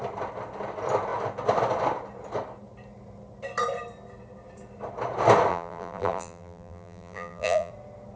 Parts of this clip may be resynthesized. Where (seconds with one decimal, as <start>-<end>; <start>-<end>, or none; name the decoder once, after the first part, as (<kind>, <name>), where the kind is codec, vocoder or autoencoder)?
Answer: 5.5-7.7 (vocoder, BigVGAN v2)